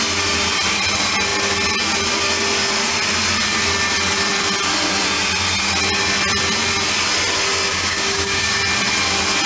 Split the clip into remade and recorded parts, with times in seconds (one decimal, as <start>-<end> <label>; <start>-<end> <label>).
0.0-7.7 recorded; 7.7-8.6 remade; 8.6-9.5 recorded